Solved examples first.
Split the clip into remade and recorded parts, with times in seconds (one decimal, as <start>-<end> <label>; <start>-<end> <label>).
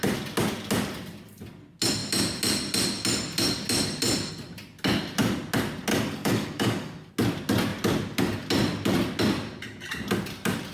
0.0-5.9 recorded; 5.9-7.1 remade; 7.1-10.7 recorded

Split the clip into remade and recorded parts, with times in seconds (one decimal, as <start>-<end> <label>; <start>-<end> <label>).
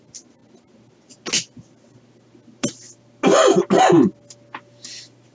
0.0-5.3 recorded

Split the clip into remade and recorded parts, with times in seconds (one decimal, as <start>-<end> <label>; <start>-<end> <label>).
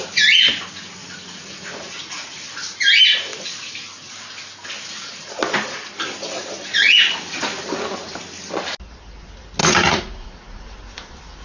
0.0-1.0 recorded; 1.0-2.4 remade; 2.4-9.6 recorded; 9.6-10.6 remade; 10.6-11.4 recorded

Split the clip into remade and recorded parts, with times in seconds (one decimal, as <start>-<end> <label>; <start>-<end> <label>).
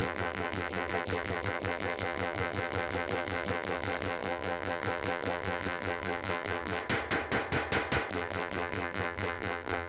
0.0-6.8 remade; 6.8-8.1 recorded; 8.1-9.9 remade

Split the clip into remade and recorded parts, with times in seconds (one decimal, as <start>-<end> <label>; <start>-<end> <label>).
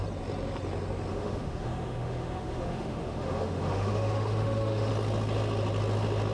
0.0-1.1 recorded; 1.1-4.9 remade; 4.9-6.3 recorded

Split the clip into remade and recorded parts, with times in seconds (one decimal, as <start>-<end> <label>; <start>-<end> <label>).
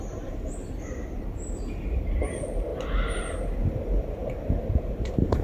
0.0-5.4 remade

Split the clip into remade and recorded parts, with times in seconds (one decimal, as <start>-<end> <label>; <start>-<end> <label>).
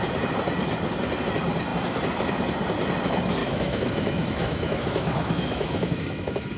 0.0-3.4 recorded; 3.4-6.6 remade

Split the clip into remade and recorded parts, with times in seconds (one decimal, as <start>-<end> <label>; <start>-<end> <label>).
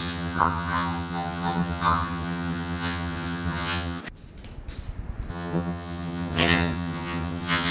0.0-4.0 remade; 4.0-5.3 recorded; 5.3-7.7 remade